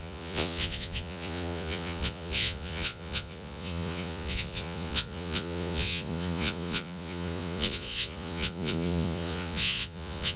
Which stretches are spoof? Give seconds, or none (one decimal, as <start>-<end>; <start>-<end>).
0.0-10.4